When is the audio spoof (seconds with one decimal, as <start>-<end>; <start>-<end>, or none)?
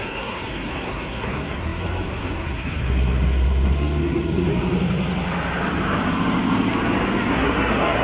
0.0-4.5; 7.3-8.0